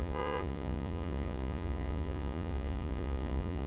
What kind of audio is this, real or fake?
fake